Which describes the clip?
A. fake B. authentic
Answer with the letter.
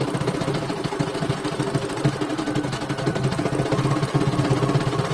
B